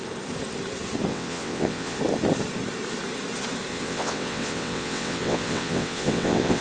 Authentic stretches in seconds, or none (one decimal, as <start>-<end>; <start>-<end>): 0.0-1.1; 2.0-3.7